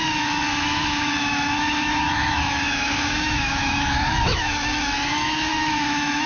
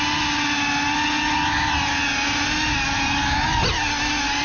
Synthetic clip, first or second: first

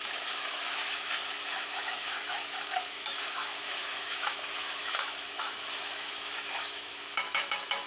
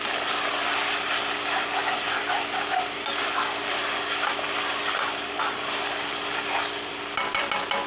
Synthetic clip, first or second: first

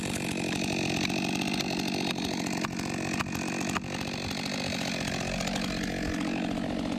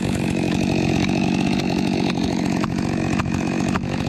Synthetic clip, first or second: second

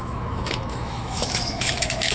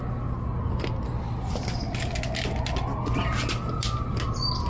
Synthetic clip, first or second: first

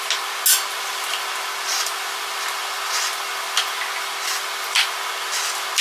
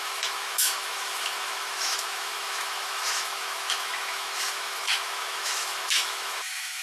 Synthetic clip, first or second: second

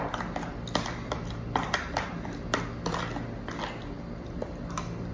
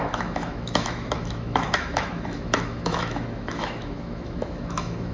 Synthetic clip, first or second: second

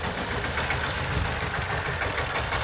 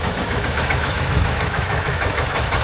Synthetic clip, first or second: second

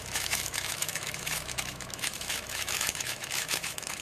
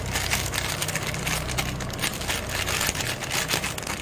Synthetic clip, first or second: first